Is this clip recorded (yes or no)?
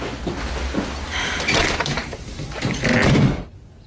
yes